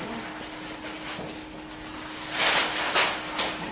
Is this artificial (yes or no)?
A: no